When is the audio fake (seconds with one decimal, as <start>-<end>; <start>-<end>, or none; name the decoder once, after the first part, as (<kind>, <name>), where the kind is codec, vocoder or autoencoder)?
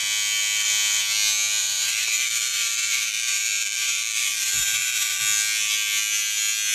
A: 1.6-5.2 (vocoder, BigVGAN v2)